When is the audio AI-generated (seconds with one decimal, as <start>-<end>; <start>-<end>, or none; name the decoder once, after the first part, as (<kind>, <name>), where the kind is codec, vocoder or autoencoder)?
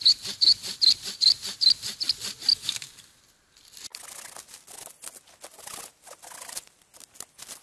2.5-3.2 (codec, DAC)